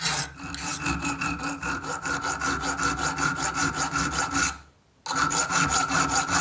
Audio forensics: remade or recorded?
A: recorded